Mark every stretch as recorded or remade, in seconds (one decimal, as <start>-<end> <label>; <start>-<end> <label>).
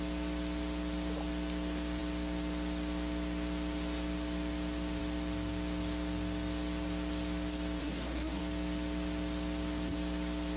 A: 0.0-7.8 recorded; 7.8-8.4 remade; 8.4-10.6 recorded